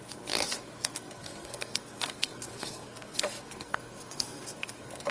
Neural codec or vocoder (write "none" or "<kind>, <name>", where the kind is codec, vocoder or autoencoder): codec, SNAC